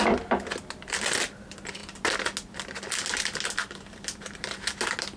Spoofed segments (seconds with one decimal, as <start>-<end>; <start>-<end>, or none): none